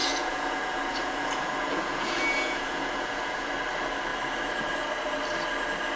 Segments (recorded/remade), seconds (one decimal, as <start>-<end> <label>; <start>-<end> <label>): 0.0-3.5 remade; 3.5-6.0 recorded